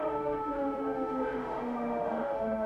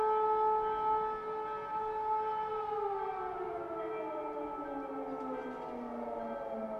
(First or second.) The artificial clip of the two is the first